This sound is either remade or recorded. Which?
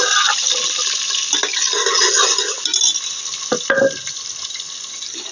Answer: recorded